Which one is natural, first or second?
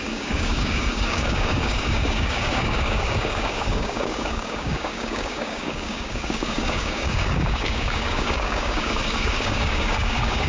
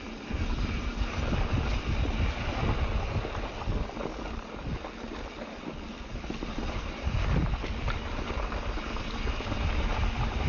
second